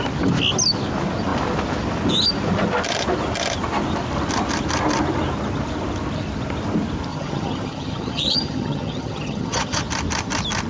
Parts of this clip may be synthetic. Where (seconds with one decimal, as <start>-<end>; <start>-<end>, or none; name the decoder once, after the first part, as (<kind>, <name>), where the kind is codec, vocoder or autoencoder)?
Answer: 7.1-9.8 (vocoder, HiFi-GAN)